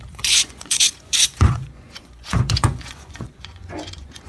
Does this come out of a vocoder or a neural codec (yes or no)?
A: yes